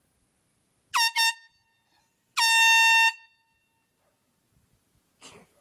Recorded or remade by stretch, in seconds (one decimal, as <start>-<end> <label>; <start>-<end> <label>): 0.0-5.6 recorded